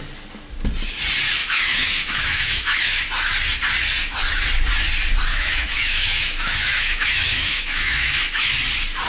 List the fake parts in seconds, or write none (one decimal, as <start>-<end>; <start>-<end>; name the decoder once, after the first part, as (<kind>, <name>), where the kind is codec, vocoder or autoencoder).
1.4-3.0 (autoencoder, DAC-VAE); 5.3-8.5